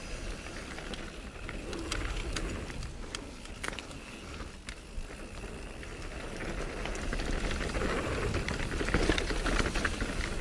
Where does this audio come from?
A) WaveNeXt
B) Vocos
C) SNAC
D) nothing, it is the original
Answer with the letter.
D